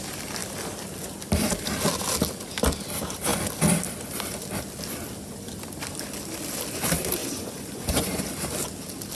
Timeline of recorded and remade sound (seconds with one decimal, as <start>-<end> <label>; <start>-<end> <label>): 0.0-7.2 recorded; 7.2-8.2 remade; 8.2-9.1 recorded